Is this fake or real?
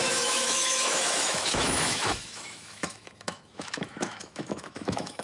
fake